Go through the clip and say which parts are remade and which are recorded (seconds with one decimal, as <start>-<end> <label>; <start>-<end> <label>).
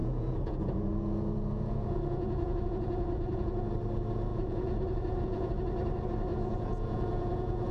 0.0-3.7 remade; 3.7-4.3 recorded; 4.3-5.5 remade; 5.5-6.3 recorded; 6.3-7.7 remade